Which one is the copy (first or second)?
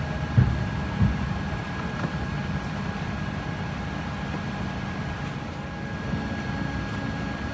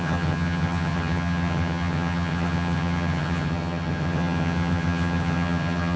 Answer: second